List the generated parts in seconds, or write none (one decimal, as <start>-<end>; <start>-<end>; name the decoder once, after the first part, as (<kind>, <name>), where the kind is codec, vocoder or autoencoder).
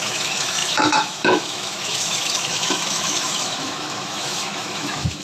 0.0-5.2 (autoencoder, DAC-VAE)